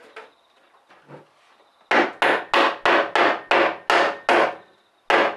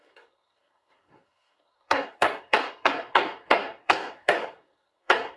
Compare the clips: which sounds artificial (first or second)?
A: second